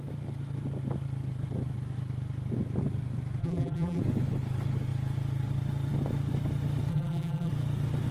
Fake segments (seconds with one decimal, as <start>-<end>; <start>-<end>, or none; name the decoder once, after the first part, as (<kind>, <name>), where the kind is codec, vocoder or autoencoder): 3.4-4.0 (vocoder, BigVGAN v2); 6.9-7.5